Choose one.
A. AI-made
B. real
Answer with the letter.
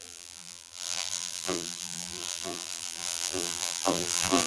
A